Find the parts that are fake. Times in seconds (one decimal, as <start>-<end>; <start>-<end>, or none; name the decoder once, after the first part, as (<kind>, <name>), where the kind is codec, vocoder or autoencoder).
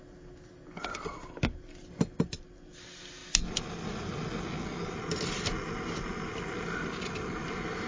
none